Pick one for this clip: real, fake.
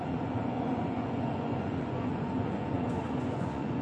fake